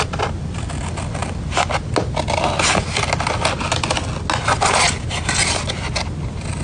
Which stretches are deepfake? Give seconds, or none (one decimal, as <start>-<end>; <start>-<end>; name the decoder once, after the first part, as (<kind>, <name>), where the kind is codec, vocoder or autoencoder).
none